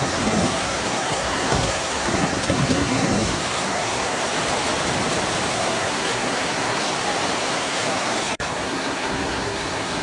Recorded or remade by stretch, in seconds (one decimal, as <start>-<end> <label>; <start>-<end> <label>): 0.0-4.2 remade; 4.2-5.5 recorded; 5.5-6.9 remade; 6.9-7.5 recorded; 7.5-10.0 remade